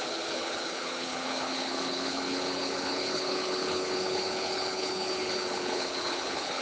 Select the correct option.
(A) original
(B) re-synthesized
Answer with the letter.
B